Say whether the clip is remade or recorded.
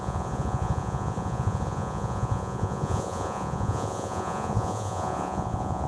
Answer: remade